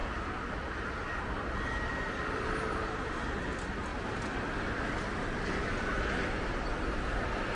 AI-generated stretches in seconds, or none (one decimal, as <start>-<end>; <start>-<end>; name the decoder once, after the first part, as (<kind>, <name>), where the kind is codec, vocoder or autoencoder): none